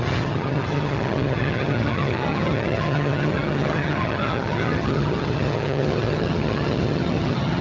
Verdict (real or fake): fake